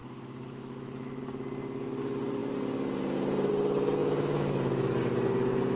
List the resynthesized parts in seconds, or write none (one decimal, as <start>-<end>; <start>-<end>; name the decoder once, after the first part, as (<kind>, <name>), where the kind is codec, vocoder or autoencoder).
0.0-1.2 (autoencoder, DAC-VAE); 4.0-5.0